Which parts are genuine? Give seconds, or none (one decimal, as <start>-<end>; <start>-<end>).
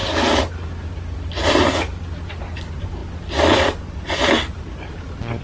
0.0-5.4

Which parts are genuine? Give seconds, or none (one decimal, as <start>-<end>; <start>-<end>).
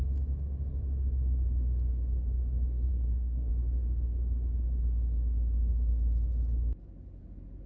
0.0-2.9; 3.5-7.7